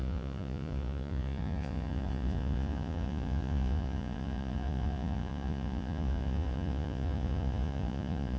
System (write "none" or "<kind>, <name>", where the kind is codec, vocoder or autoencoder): vocoder, Vocos